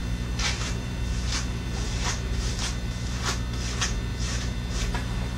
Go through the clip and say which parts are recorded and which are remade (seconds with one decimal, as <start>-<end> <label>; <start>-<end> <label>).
0.0-3.2 remade; 3.2-4.1 recorded; 4.1-4.7 remade; 4.7-5.4 recorded